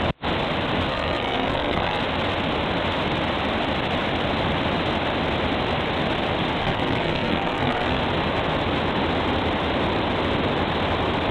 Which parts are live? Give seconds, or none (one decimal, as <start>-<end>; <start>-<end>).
0.0-0.9; 2.0-6.6; 8.0-11.3